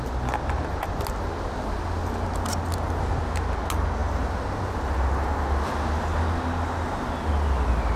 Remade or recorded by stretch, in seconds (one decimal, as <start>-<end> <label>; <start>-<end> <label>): 0.0-8.0 recorded